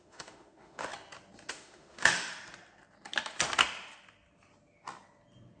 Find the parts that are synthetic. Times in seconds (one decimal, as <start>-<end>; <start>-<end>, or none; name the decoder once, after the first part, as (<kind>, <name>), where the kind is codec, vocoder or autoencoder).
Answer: 0.0-0.9 (autoencoder, DAC-VAE); 1.5-2.3